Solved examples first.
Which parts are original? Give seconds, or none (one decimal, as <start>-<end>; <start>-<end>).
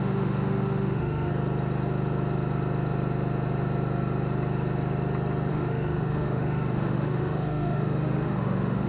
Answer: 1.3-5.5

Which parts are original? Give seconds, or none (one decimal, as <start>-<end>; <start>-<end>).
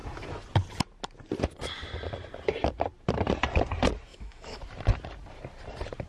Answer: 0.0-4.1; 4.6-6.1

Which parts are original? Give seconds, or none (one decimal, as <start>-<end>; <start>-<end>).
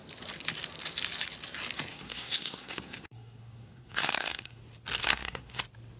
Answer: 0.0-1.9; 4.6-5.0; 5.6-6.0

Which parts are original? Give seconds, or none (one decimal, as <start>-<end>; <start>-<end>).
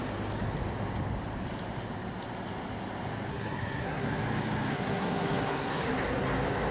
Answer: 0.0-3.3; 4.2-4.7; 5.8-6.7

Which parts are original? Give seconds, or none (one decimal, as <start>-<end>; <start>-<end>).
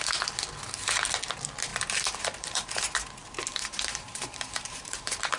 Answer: 0.0-1.7; 2.9-3.5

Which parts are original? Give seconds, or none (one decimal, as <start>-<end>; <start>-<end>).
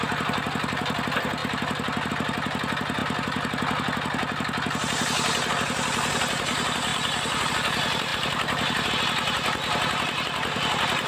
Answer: 0.0-11.1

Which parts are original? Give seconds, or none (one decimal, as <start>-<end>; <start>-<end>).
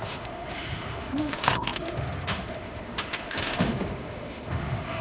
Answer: none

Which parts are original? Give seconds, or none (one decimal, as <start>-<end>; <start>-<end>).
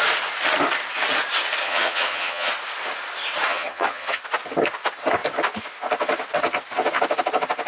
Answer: 0.0-1.6; 2.5-3.5; 4.2-7.7